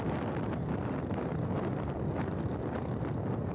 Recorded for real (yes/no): yes